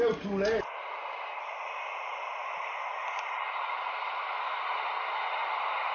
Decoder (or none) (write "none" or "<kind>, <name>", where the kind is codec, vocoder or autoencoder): none